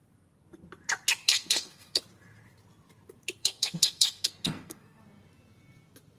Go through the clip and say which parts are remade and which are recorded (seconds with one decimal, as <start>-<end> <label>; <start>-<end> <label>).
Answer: 0.0-1.2 recorded; 1.2-2.0 remade; 2.0-3.4 recorded; 3.4-5.0 remade; 5.0-6.2 recorded